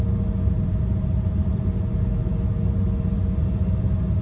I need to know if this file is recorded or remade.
recorded